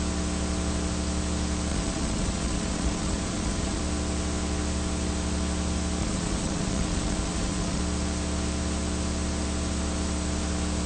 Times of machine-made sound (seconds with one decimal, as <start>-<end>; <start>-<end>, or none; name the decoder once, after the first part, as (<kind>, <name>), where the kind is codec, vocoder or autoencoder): 1.7-3.8 (vocoder, Vocos); 6.0-7.8